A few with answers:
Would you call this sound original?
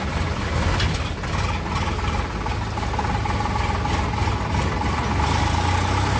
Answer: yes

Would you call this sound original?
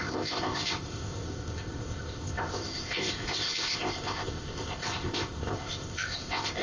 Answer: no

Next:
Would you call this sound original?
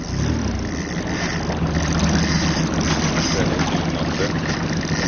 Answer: yes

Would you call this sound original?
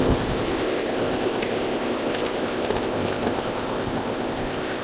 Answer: no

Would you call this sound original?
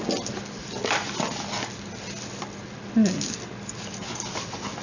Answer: yes